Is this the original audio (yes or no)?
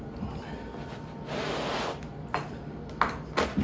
yes